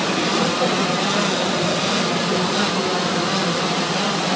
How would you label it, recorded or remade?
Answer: recorded